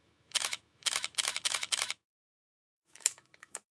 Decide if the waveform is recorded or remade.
remade